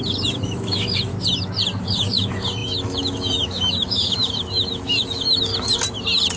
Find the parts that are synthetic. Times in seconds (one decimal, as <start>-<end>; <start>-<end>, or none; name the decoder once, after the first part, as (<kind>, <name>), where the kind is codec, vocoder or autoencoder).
0.0-1.1 (autoencoder, DAC-VAE); 1.8-5.5